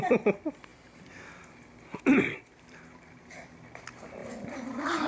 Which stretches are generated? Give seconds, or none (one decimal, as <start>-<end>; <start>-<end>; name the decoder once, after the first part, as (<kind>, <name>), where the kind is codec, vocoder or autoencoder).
0.7-3.8 (vocoder, BigVGAN v2)